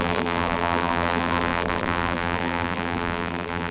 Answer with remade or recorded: remade